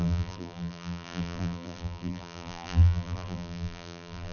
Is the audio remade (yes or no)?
yes